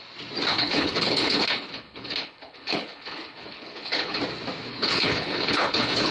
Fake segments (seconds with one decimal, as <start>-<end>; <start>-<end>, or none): 0.5-4.2; 4.7-6.1